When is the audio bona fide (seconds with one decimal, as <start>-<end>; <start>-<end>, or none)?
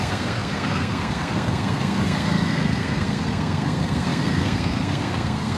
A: none